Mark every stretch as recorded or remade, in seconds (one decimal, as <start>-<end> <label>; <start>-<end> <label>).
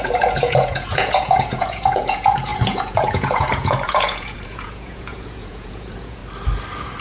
0.0-6.2 remade; 6.2-7.0 recorded